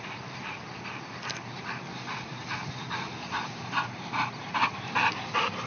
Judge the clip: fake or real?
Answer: real